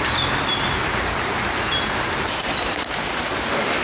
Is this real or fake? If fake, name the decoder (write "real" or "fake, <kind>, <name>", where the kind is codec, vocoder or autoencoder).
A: fake, vocoder, BigVGAN v2